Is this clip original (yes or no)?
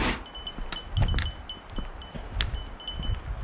yes